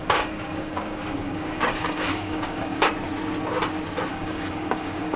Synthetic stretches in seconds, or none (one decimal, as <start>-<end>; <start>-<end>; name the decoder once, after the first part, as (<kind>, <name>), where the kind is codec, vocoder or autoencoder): 0.0-2.9 (codec, DAC); 4.1-5.2